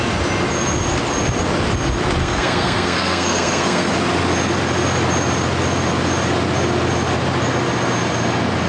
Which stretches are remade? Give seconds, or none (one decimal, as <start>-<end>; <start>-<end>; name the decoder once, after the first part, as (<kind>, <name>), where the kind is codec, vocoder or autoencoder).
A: 2.2-3.9 (codec, SNAC)